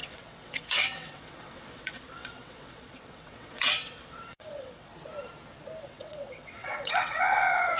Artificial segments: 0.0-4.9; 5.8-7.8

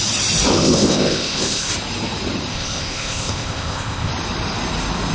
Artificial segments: 0.5-1.7; 2.5-4.1

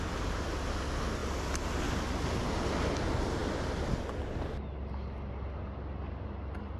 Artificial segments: none